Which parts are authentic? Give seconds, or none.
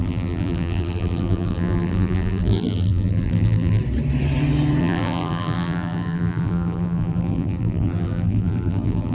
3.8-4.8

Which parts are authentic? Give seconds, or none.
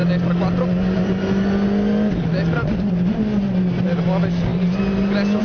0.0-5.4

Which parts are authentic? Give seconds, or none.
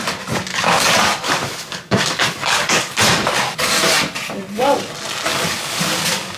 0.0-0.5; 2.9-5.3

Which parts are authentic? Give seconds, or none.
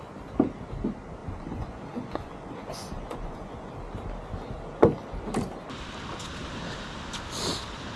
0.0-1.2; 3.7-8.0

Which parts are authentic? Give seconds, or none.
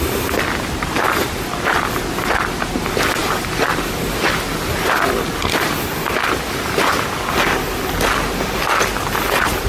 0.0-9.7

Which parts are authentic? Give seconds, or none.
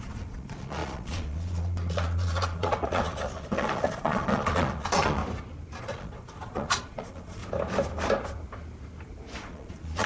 5.2-5.8; 7.4-9.4